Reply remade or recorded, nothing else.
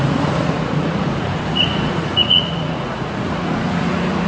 remade